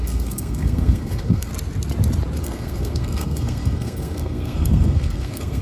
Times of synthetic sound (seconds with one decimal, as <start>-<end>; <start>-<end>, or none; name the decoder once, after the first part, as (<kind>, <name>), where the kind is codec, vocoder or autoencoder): 0.0-1.5 (codec, SNAC); 2.4-5.6